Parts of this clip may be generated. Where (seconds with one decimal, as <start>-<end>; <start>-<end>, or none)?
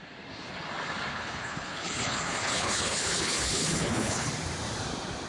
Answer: 1.1-4.3